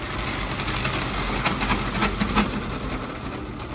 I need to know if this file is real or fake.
real